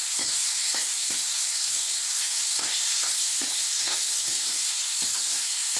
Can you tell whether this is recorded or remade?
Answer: remade